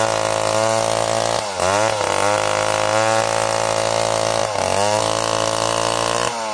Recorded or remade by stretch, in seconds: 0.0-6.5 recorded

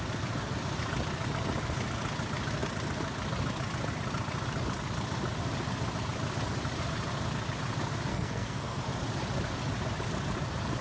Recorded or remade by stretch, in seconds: 0.0-8.1 recorded; 8.1-8.8 remade; 8.8-10.8 recorded

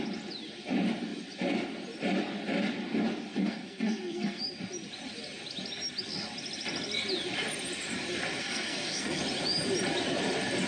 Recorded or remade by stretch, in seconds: 0.0-3.3 recorded; 3.3-4.4 remade; 4.4-8.4 recorded; 8.4-9.2 remade; 9.2-10.7 recorded

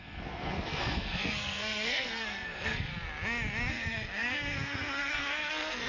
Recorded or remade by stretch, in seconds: 0.0-2.9 remade; 2.9-3.7 recorded; 3.7-5.9 remade

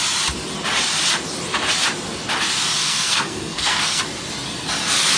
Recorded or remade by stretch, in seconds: 0.0-2.8 recorded; 2.8-4.0 remade; 4.0-5.2 recorded

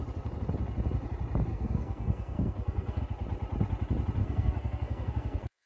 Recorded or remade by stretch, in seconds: 0.0-1.5 recorded; 1.5-3.0 remade; 3.0-4.2 recorded; 4.2-5.7 remade

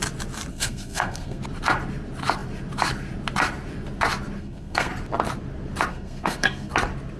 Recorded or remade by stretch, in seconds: 0.0-0.5 recorded; 0.5-1.4 remade; 1.4-4.4 recorded; 4.4-4.9 remade; 4.9-5.9 recorded; 5.9-6.7 remade; 6.7-7.2 recorded